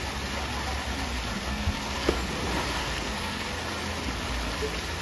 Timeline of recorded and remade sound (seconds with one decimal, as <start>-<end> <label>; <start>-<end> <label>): 0.0-1.5 recorded; 1.5-2.3 remade; 2.3-2.8 recorded; 2.8-3.5 remade; 3.5-5.0 recorded